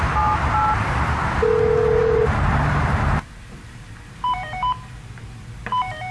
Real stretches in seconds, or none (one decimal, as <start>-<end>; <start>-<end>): 0.0-2.0